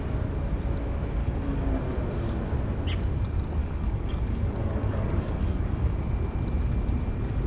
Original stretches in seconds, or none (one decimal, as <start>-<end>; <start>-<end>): 0.0-1.2; 1.7-3.6; 6.0-7.5